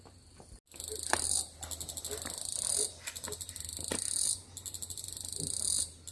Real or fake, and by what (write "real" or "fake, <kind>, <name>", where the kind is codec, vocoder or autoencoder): real